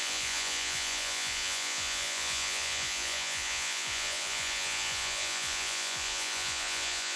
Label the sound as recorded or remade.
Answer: remade